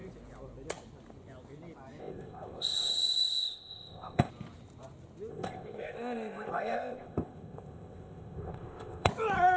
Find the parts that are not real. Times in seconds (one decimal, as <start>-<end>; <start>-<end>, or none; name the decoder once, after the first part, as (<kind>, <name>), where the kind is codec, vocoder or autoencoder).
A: 2.0-4.3 (codec, ZipCodec); 5.3-9.1